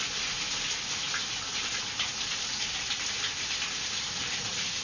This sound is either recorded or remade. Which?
recorded